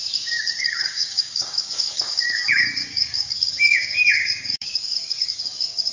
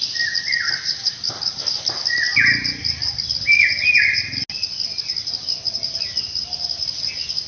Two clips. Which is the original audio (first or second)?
second